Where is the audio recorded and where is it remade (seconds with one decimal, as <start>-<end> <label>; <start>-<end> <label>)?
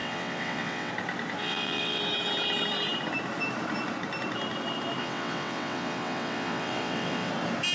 0.0-0.9 remade; 0.9-1.4 recorded; 1.4-2.0 remade; 2.0-5.0 recorded; 5.0-7.3 remade; 7.3-7.7 recorded